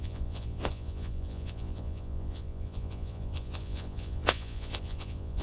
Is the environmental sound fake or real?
fake